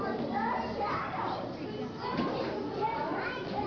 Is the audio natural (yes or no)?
yes